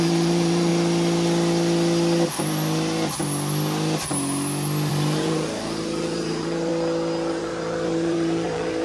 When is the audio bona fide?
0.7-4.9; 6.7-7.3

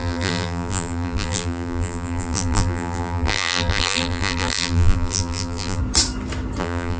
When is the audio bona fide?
5.8-6.6